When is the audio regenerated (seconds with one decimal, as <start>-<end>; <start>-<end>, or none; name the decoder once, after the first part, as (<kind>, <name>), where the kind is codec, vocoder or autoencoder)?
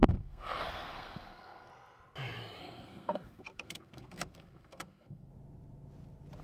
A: 0.0-1.7 (codec, SNAC); 2.6-5.3